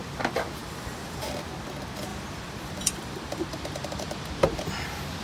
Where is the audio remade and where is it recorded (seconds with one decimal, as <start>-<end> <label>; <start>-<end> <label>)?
0.0-0.6 recorded; 0.6-1.3 remade; 1.3-2.1 recorded; 2.1-4.3 remade; 4.3-5.2 recorded